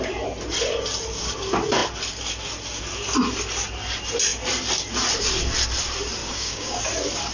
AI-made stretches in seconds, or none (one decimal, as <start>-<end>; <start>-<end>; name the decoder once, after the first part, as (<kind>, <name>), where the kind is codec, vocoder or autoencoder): 6.2-6.8 (codec, DAC)